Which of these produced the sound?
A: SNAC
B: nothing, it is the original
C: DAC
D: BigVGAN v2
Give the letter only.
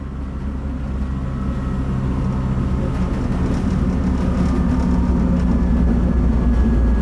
B